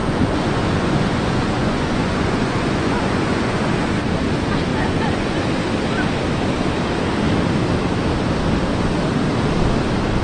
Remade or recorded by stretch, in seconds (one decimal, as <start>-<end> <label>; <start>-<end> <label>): 0.0-4.0 remade; 4.0-4.7 recorded; 4.7-5.4 remade; 5.4-10.2 recorded